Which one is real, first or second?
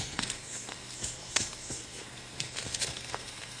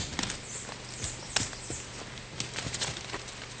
second